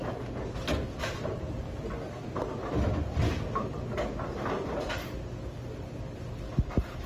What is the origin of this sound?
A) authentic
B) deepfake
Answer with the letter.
A